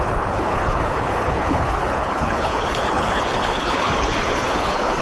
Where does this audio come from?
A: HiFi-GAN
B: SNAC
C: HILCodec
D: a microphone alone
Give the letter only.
C